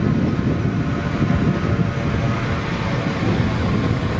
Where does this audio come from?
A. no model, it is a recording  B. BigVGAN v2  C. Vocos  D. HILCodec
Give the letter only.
A